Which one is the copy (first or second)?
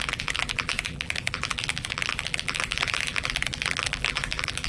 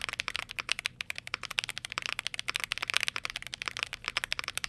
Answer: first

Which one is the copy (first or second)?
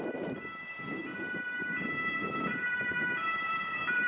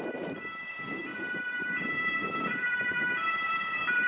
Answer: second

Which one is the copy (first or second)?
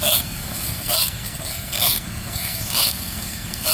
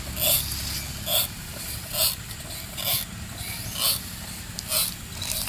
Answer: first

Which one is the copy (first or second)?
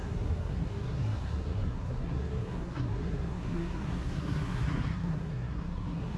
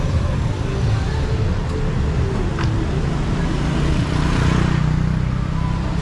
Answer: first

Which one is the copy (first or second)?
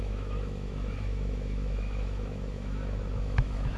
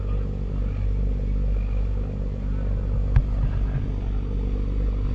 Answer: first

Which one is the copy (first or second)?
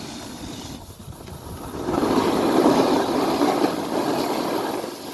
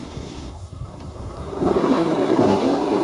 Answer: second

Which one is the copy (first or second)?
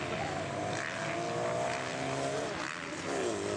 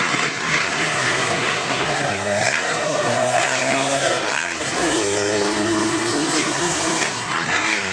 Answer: second